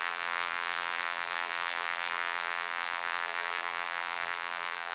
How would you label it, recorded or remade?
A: remade